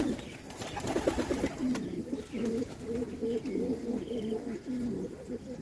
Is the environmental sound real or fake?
real